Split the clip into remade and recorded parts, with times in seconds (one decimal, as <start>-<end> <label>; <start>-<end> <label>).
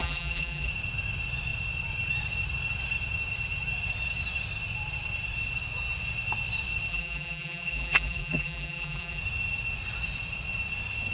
0.0-0.7 remade; 0.7-6.9 recorded; 6.9-9.2 remade; 9.2-11.1 recorded